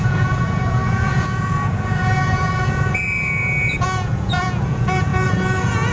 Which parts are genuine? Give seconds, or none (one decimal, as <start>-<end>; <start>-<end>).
none